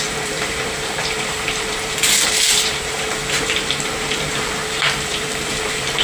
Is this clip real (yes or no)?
no